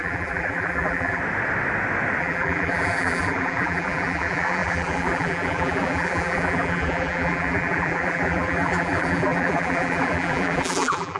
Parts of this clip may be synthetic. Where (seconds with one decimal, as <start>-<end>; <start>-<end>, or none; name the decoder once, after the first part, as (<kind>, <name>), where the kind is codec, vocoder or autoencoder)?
0.0-1.2 (vocoder, BigVGAN v2); 2.2-11.2